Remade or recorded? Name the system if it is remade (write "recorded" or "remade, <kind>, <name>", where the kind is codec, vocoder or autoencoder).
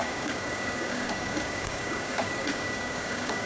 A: remade, codec, DAC